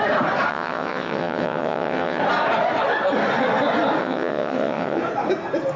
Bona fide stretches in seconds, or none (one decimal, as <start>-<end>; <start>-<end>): 0.0-0.5; 2.2-4.0; 5.0-5.8